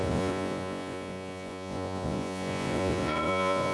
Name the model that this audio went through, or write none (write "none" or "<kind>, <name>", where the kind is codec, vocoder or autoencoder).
vocoder, Vocos